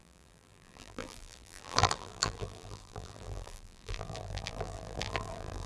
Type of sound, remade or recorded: remade